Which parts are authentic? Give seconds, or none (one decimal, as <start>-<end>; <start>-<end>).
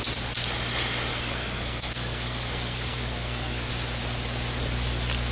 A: 0.0-1.1; 3.7-5.3